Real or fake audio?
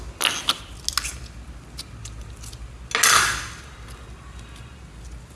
real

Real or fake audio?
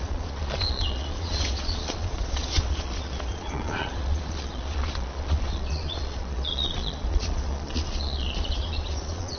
fake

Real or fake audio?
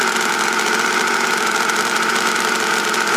real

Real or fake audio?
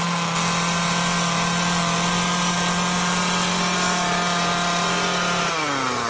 real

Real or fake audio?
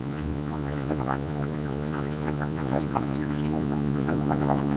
fake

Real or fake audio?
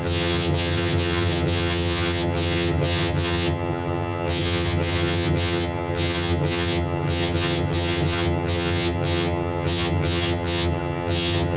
fake